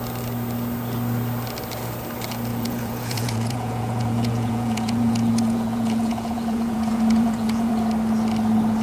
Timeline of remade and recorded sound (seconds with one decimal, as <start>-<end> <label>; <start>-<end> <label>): 0.0-2.5 recorded; 2.5-7.7 remade; 7.7-8.8 recorded